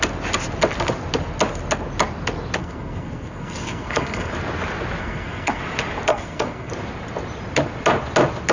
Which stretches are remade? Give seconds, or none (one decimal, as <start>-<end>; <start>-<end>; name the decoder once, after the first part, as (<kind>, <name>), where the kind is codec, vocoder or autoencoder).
2.6-4.3 (codec, SNAC); 5.0-5.6; 6.1-6.7